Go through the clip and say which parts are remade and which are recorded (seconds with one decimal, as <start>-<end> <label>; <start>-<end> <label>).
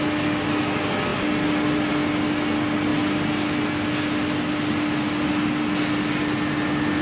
0.0-7.0 recorded